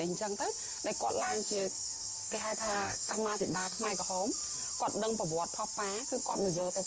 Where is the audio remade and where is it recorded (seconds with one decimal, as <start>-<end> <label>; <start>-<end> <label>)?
0.0-1.2 recorded; 1.2-3.9 remade; 3.9-6.2 recorded; 6.2-6.9 remade